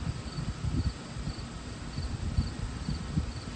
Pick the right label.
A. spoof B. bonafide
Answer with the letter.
A